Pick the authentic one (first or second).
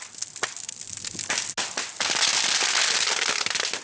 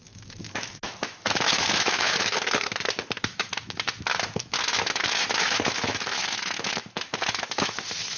first